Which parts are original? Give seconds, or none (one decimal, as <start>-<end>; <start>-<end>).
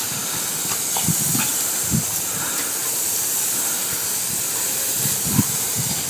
0.0-6.1